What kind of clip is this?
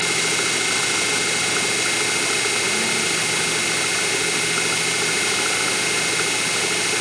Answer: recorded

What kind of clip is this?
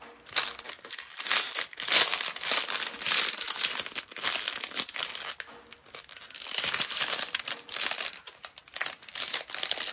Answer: recorded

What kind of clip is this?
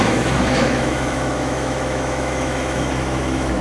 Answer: remade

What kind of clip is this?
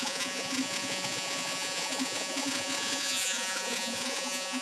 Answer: remade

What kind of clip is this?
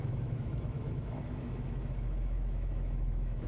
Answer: remade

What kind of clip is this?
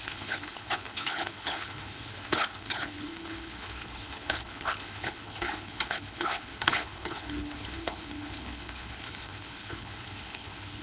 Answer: remade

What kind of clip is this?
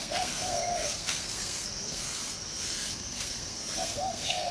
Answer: remade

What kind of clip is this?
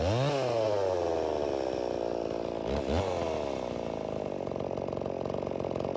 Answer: recorded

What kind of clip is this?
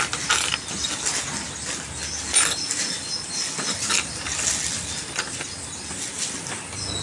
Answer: recorded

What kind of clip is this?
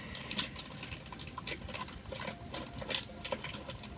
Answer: recorded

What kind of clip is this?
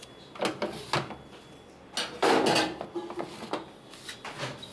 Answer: recorded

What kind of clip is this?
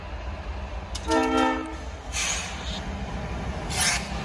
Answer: recorded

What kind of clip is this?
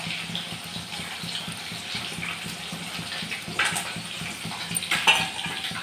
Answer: recorded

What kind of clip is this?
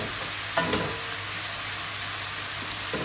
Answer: recorded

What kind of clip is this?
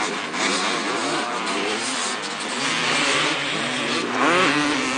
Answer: recorded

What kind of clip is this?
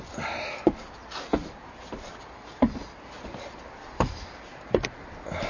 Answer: recorded